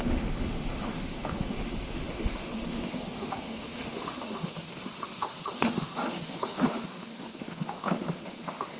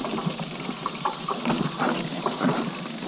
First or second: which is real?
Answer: second